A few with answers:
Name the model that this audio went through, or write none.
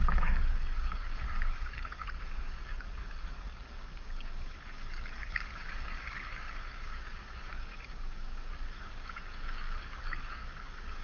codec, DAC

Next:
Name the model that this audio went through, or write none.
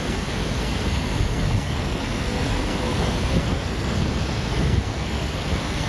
codec, SNAC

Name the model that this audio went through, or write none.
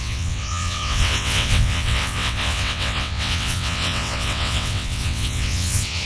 vocoder, WaveNeXt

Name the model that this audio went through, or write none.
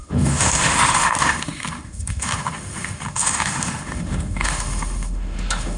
autoencoder, DAC-VAE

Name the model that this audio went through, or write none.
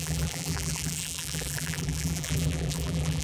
vocoder, BigVGAN v2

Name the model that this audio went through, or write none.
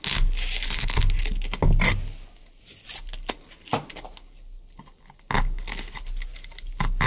none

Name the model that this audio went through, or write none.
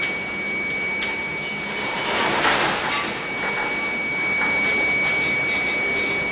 none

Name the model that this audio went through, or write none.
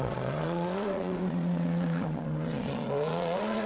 vocoder, Vocos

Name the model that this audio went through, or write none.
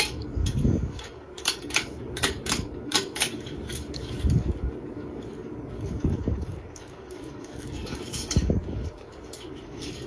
codec, DAC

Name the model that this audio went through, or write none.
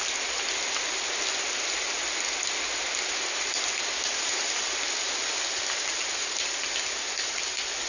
none